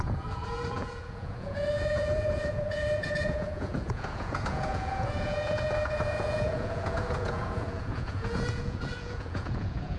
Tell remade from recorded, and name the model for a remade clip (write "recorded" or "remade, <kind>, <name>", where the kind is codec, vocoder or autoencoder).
remade, vocoder, Vocos